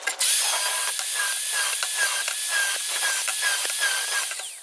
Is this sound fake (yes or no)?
no